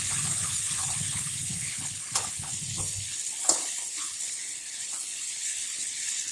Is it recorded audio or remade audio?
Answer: remade